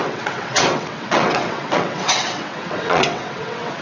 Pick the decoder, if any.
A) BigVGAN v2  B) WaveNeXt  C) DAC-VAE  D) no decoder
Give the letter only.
B